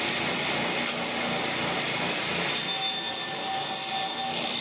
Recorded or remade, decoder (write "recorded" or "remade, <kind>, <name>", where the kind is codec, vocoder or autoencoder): recorded